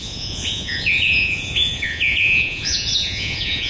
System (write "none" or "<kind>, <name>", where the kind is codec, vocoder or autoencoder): vocoder, Vocos